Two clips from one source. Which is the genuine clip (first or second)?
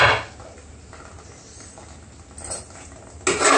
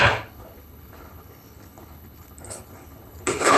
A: first